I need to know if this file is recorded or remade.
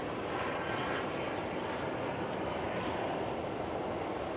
recorded